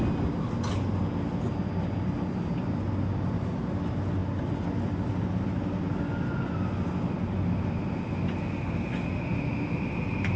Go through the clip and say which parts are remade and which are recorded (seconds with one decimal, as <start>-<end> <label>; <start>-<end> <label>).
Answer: 0.0-10.4 recorded